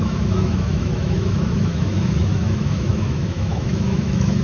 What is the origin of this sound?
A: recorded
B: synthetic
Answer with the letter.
B